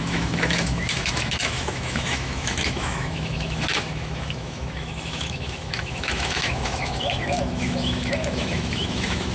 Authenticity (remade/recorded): remade